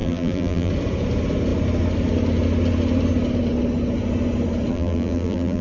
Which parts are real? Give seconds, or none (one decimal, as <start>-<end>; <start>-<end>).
0.7-4.7